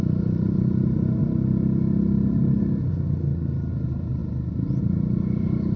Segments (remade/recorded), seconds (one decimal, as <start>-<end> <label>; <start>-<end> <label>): 0.0-1.2 remade; 1.2-3.7 recorded; 3.7-4.2 remade; 4.2-4.8 recorded; 4.8-5.8 remade